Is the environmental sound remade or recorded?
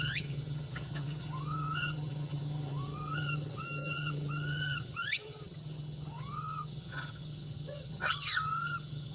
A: remade